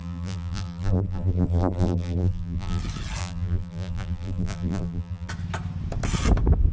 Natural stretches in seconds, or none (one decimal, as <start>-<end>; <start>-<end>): 2.8-3.2; 5.3-6.7